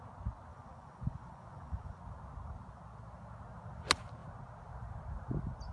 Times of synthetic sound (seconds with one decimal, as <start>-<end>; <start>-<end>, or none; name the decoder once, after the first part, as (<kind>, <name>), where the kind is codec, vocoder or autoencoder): 0.5-2.0 (vocoder, Vocos)